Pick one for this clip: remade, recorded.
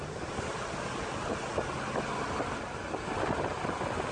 recorded